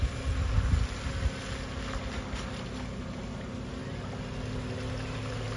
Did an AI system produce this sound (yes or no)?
no